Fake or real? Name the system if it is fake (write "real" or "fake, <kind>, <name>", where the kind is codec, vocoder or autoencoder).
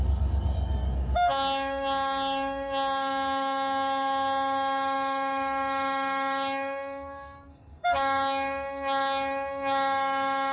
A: fake, codec, DAC